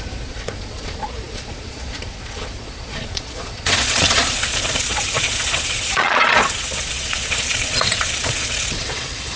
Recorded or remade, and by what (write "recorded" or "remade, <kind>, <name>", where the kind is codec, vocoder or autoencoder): remade, vocoder, Vocos